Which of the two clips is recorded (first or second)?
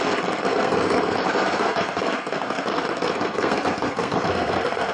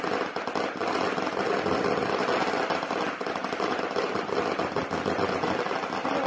second